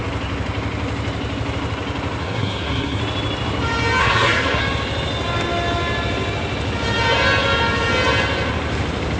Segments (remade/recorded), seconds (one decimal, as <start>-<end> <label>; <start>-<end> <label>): 0.0-2.2 recorded; 2.2-3.0 remade; 3.0-4.0 recorded; 4.0-4.6 remade; 4.6-9.2 recorded